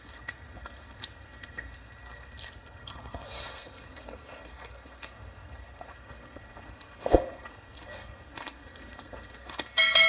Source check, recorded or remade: remade